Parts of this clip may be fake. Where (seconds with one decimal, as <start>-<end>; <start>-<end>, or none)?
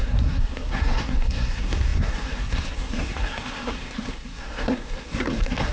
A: 0.0-5.7